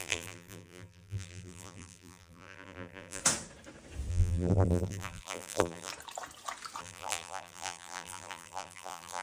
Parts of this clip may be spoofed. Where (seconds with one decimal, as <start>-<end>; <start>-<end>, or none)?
0.0-3.2; 4.1-5.9; 6.8-9.2